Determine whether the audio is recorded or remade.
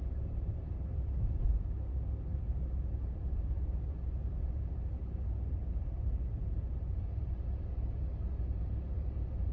remade